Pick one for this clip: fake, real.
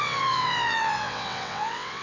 fake